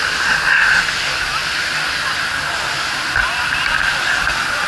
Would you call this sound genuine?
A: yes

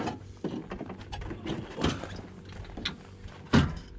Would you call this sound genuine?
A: yes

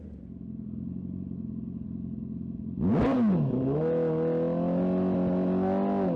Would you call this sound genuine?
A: yes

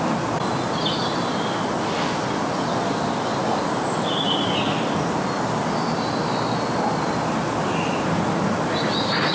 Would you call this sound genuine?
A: yes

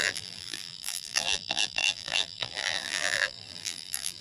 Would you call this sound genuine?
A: no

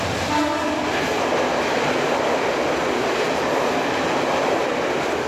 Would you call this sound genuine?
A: yes